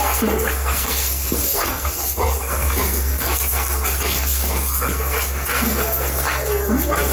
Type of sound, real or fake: fake